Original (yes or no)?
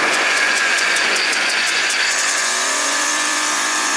no